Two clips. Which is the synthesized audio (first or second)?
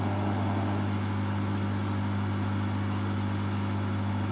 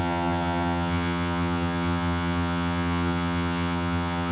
second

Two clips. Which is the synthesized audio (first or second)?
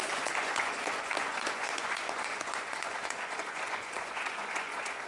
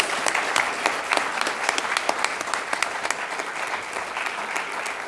first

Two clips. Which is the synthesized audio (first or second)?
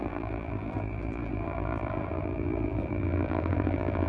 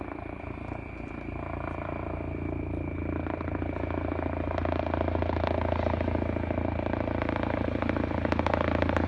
first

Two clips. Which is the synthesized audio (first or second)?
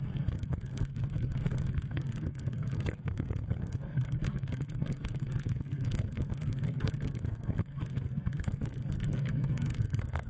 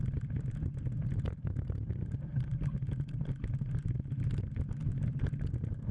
first